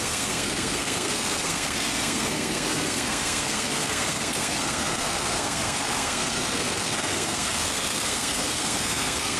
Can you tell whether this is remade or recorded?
remade